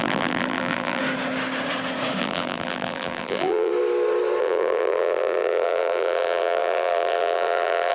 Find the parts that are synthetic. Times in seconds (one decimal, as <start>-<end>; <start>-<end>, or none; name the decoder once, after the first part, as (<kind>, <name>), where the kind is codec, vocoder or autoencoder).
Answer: 0.0-1.0 (vocoder, BigVGAN v2); 2.2-3.7; 4.4-7.9